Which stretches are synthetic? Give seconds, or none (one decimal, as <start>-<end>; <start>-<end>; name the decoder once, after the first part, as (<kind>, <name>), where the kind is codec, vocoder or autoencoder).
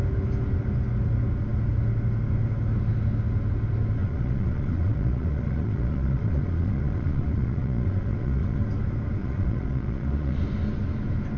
4.0-8.6 (vocoder, Vocos); 9.2-10.4